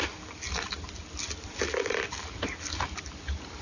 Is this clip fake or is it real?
real